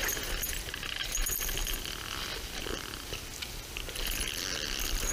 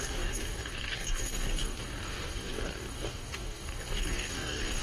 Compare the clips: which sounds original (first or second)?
first